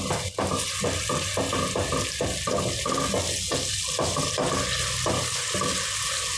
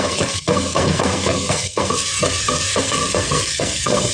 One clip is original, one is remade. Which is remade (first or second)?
second